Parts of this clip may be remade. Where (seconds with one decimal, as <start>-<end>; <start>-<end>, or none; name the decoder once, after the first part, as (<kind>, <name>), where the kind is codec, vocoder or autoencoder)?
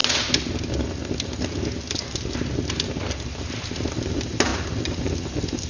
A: none